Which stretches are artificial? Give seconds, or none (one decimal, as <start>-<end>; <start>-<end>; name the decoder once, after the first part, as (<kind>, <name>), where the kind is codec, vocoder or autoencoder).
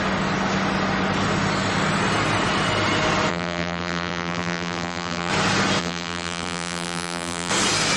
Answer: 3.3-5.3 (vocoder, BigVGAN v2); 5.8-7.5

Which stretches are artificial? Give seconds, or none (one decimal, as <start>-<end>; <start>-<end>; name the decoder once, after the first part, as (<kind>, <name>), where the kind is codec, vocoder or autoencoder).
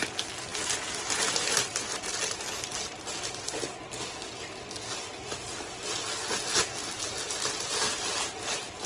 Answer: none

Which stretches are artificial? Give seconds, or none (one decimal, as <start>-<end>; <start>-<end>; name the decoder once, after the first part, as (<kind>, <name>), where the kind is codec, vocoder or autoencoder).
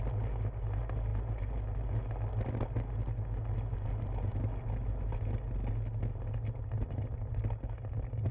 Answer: none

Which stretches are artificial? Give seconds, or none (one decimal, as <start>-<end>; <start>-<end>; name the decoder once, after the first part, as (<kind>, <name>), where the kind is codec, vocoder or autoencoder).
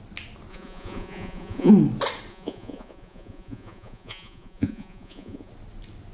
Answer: 0.5-1.7 (vocoder, Vocos); 2.3-5.5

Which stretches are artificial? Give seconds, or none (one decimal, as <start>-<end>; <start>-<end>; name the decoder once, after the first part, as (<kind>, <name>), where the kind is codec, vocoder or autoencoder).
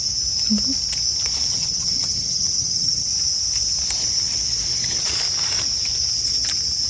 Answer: 1.5-3.1 (vocoder, HiFi-GAN)